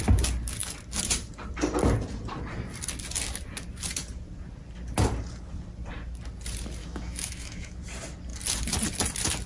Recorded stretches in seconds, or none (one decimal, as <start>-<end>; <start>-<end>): 0.0-6.8; 7.8-9.5